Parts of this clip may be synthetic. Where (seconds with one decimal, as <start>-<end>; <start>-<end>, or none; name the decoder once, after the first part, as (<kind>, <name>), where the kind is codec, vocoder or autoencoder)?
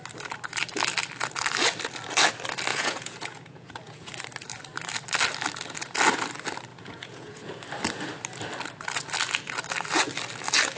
2.7-4.1 (vocoder, Vocos); 6.7-7.5